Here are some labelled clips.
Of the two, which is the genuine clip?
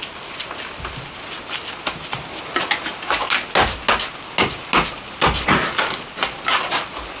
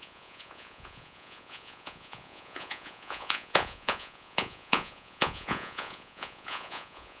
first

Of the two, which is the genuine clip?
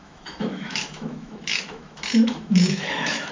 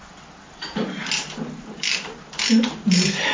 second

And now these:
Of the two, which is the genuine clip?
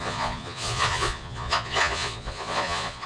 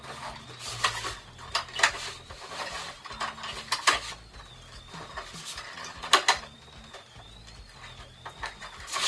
second